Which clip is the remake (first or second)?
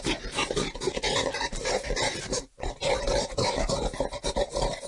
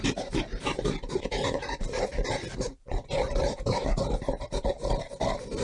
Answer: second